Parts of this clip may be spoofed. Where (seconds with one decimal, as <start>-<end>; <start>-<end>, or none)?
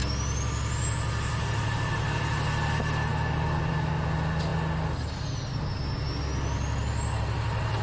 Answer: none